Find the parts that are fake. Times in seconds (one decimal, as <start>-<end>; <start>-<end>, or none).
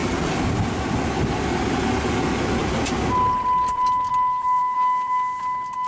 none